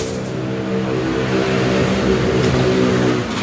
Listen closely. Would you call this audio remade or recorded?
recorded